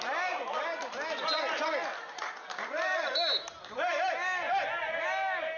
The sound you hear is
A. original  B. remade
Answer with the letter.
A